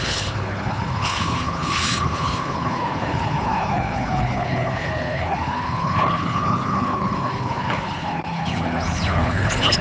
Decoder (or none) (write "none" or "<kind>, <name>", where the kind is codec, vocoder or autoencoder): codec, HILCodec